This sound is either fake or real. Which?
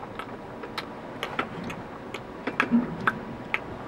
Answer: real